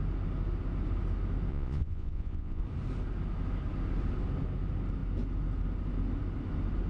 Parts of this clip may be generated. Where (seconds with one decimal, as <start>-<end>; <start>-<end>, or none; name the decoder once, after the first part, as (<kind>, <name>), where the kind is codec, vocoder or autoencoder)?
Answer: 1.5-2.6 (vocoder, Vocos)